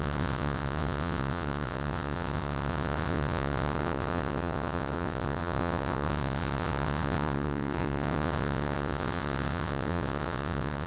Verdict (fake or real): fake